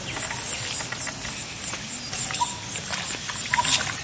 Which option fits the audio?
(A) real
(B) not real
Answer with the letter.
A